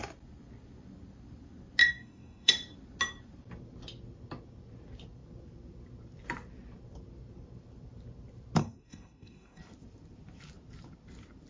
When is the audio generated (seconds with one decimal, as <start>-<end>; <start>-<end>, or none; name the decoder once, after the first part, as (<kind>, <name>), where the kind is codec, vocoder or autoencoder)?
1.8-2.5 (codec, DAC); 8.6-9.6